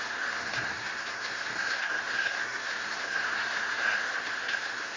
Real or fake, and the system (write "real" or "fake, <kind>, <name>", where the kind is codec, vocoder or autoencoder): fake, codec, SNAC